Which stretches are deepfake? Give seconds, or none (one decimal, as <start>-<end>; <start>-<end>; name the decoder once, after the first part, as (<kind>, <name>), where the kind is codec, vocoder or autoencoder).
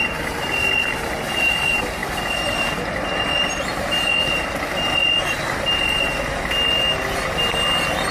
2.0-4.4 (vocoder, BigVGAN v2); 5.0-5.7